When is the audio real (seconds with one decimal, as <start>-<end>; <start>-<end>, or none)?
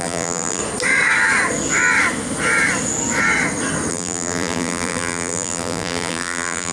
0.6-3.9